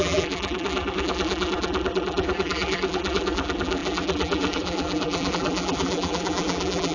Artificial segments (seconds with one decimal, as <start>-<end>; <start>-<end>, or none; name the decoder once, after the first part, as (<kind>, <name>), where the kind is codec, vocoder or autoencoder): 0.0-6.9 (vocoder, BigVGAN v2)